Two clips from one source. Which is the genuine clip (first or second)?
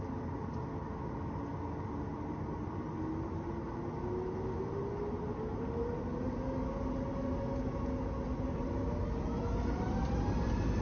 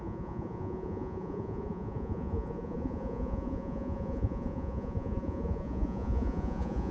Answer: first